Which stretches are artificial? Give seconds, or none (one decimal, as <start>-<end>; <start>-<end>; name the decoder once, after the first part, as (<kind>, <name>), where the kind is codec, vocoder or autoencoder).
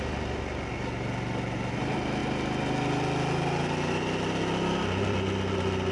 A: none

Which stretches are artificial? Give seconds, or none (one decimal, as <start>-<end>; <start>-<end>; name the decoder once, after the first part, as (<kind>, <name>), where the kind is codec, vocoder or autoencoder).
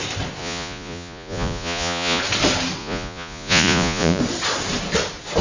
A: 0.4-2.2 (vocoder, Vocos); 2.8-4.2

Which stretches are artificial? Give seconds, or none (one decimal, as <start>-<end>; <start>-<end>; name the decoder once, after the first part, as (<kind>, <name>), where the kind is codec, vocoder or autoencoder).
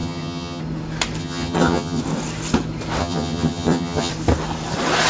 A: 0.0-0.6 (vocoder, HiFi-GAN); 1.2-2.0; 3.0-4.1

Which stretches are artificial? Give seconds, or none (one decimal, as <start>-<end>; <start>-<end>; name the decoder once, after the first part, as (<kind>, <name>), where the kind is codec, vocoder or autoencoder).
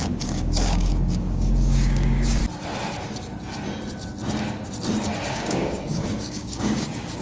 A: 0.0-2.4 (codec, DAC); 5.3-7.2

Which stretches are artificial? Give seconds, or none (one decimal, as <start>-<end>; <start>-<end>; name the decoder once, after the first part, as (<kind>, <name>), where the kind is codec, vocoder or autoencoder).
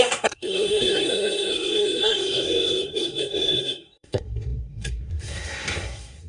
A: 0.0-6.3 (codec, SNAC)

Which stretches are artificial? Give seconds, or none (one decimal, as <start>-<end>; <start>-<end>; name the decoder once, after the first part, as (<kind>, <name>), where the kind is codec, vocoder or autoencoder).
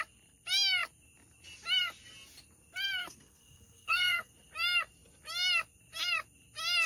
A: 3.0-4.3 (codec, SNAC)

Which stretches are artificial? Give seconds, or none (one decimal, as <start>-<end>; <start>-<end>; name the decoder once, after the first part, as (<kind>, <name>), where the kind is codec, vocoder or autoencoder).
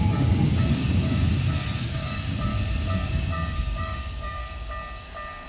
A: 0.0-1.3 (codec, DAC); 1.8-2.5; 3.1-4.4